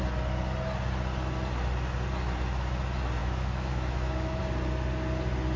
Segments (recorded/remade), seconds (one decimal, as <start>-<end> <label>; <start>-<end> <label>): 0.0-3.2 recorded; 3.2-4.4 remade; 4.4-5.6 recorded